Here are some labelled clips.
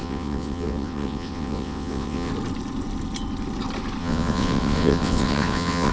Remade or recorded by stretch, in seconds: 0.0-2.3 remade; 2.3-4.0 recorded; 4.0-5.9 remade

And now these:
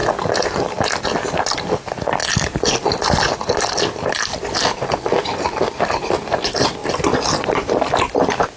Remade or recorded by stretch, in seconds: 0.0-8.6 recorded

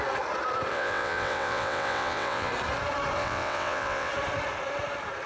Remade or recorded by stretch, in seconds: 0.0-0.7 recorded; 0.7-2.5 remade; 2.5-3.2 recorded; 3.2-4.1 remade; 4.1-5.3 recorded

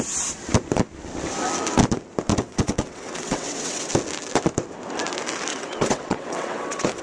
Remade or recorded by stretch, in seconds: 0.0-2.3 recorded; 2.3-3.9 remade; 3.9-5.5 recorded; 5.5-7.0 remade

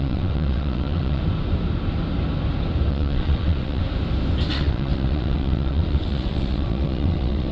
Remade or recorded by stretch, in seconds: 0.0-1.2 remade; 1.2-2.9 recorded; 2.9-3.8 remade; 3.8-4.5 recorded; 4.5-7.5 remade